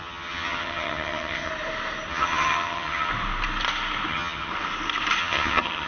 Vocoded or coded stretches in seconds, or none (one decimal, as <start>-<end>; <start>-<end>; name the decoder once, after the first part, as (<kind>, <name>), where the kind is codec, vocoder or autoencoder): 0.0-1.5 (vocoder, HiFi-GAN); 2.1-3.1; 4.1-4.5; 5.2-5.9